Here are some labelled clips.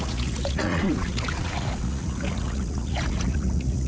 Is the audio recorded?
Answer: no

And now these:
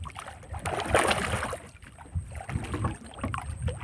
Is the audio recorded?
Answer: yes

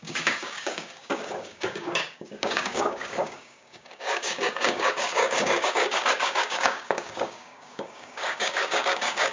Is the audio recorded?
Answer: no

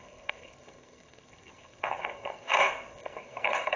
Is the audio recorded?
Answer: no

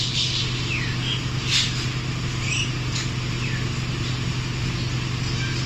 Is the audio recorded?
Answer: yes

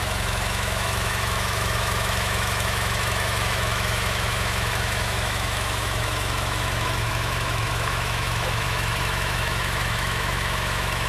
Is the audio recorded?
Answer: no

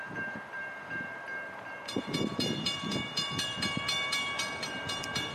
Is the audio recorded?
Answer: no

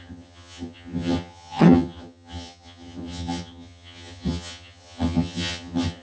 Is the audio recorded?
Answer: no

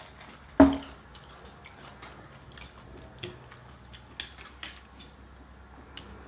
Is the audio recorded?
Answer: yes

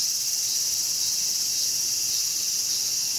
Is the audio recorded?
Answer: yes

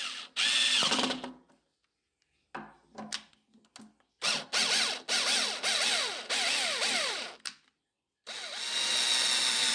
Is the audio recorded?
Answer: yes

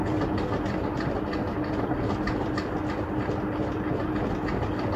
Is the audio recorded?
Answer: yes